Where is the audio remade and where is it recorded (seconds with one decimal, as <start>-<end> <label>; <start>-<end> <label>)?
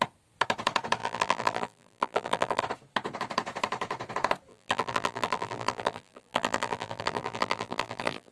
0.0-1.0 recorded; 1.0-2.6 remade; 2.6-4.5 recorded; 4.5-8.3 remade